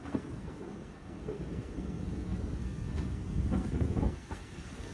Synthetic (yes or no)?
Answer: yes